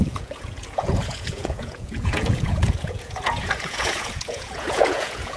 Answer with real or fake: fake